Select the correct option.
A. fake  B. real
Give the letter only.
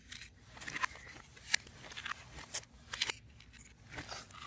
B